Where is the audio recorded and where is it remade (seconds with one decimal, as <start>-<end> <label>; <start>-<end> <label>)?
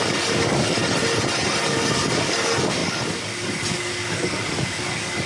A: 0.0-0.8 remade; 0.8-1.7 recorded; 1.7-5.3 remade